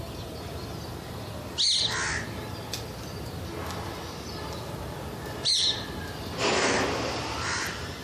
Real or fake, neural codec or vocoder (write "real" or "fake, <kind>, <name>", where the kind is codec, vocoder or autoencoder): real